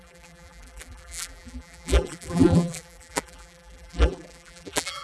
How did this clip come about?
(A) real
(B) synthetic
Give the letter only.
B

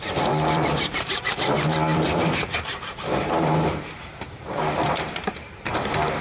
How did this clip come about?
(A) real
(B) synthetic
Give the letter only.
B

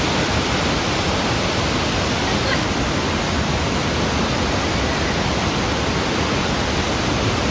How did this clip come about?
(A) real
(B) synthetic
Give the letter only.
A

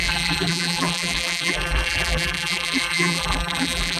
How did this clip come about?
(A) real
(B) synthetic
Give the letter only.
B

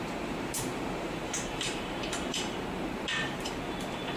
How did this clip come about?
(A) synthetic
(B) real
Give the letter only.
A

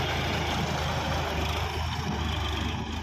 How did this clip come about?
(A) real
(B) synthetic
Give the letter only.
A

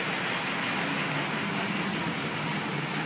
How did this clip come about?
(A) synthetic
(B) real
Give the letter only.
B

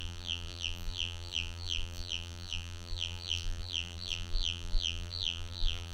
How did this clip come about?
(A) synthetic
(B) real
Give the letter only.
A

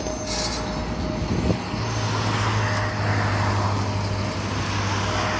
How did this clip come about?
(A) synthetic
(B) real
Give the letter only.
B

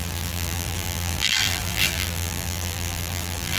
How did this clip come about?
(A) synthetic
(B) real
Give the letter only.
A